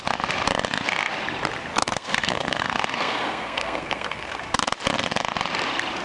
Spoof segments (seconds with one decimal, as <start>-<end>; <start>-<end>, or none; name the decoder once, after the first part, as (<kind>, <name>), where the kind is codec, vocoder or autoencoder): 1.7-4.4 (codec, SNAC)